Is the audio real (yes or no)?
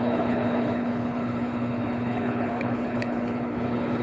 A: no